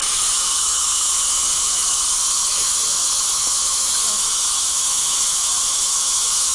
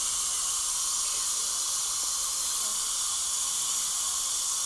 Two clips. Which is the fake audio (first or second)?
first